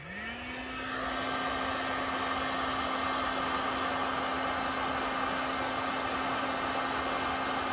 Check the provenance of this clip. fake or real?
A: real